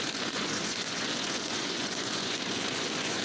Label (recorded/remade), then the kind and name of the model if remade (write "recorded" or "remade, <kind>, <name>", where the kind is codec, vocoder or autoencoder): remade, vocoder, Vocos